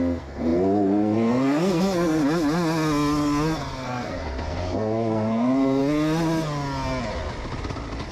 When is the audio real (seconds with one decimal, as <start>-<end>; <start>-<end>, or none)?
2.2-3.6; 5.8-8.1